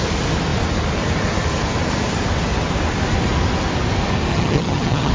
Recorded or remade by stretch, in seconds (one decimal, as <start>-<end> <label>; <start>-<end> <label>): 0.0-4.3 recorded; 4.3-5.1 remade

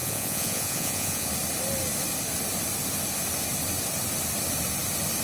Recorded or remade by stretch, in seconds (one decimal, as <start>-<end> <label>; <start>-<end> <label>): 0.0-1.3 remade; 1.3-5.2 recorded

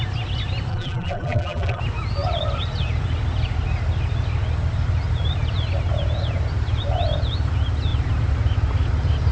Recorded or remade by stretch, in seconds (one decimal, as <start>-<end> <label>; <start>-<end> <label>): 0.0-0.7 recorded; 0.7-1.8 remade; 1.8-9.3 recorded

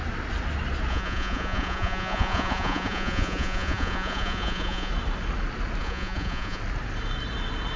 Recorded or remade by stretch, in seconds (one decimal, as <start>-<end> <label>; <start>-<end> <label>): 0.0-0.9 recorded; 0.9-4.9 remade; 4.9-5.8 recorded; 5.8-6.6 remade; 6.6-7.8 recorded